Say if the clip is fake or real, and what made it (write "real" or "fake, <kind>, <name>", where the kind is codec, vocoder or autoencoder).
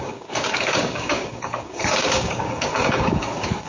fake, codec, DAC